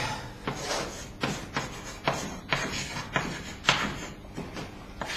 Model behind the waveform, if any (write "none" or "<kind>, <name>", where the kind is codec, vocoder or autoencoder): none